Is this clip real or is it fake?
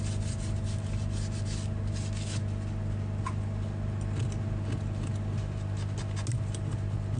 real